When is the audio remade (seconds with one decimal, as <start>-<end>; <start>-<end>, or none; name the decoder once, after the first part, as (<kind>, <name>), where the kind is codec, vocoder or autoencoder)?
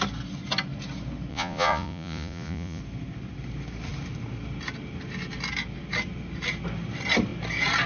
1.3-2.8 (vocoder, Vocos)